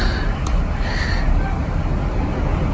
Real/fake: real